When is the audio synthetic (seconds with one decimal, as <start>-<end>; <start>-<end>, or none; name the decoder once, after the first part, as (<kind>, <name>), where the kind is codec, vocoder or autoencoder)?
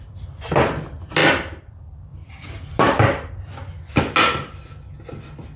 2.1-4.0 (vocoder, BigVGAN v2)